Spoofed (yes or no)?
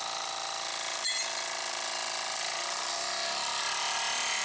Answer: no